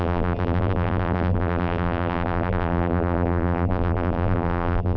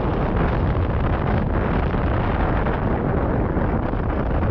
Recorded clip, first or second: second